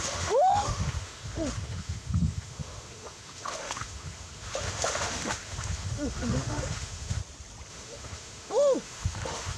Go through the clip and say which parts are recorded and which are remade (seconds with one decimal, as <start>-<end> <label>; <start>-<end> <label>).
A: 0.0-7.2 remade; 7.2-7.7 recorded; 7.7-9.6 remade